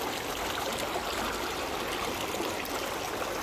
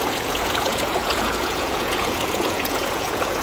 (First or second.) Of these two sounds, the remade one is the second